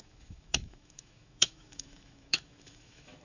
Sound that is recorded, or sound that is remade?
remade